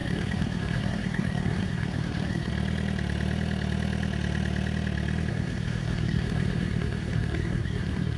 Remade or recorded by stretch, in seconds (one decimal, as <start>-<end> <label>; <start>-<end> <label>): 0.0-2.5 remade; 2.5-5.3 recorded; 5.3-8.2 remade